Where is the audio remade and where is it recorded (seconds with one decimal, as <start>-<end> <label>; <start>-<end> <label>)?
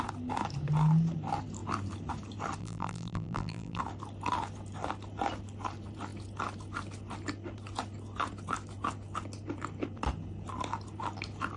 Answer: 0.0-2.6 recorded; 2.6-3.8 remade; 3.8-11.6 recorded